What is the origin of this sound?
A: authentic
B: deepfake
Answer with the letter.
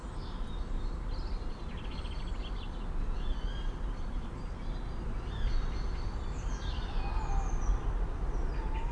A